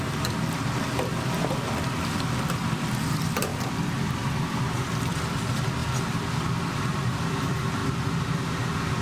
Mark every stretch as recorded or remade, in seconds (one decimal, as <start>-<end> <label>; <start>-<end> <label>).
0.0-7.8 remade; 7.8-9.0 recorded

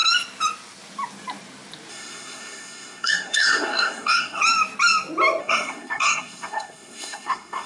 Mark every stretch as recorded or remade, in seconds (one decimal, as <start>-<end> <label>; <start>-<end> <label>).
0.0-1.9 recorded; 1.9-4.4 remade; 4.4-5.4 recorded; 5.4-7.7 remade

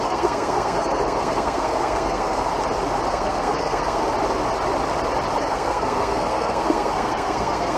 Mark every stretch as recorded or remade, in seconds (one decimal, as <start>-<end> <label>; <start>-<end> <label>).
0.0-2.5 remade; 2.5-3.1 recorded; 3.1-4.0 remade; 4.0-5.4 recorded; 5.4-7.8 remade